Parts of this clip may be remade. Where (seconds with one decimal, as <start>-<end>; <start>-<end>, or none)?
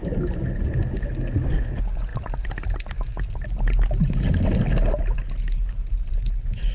none